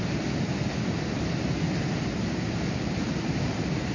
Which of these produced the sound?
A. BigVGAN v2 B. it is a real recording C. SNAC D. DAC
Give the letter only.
B